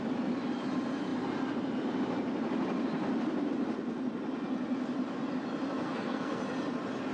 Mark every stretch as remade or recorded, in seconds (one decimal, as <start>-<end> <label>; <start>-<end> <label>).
0.0-5.8 recorded; 5.8-6.4 remade; 6.4-7.1 recorded